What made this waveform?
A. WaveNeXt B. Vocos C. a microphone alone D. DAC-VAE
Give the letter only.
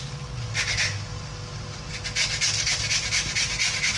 C